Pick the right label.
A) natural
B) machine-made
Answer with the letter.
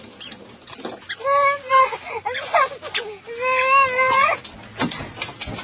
A